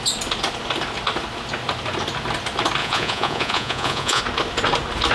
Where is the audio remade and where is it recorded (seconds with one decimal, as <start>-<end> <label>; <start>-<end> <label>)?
0.0-2.8 recorded; 2.8-4.2 remade; 4.2-5.1 recorded